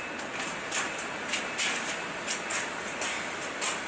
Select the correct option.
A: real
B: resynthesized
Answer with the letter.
A